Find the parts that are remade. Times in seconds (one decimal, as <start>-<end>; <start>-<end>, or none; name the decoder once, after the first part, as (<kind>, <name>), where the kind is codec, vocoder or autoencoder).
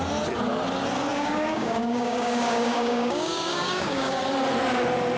1.1-4.2 (codec, DAC)